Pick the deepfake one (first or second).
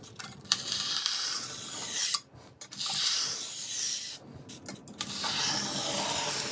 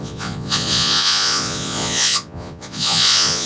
second